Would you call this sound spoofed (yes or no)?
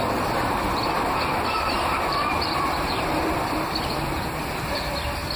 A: yes